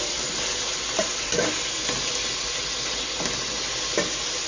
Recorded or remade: recorded